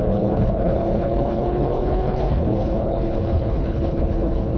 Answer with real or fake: fake